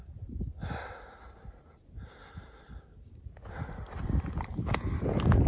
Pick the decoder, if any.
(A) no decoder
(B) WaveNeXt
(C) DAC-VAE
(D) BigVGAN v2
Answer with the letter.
A